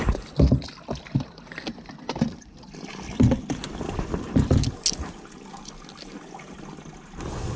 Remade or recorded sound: recorded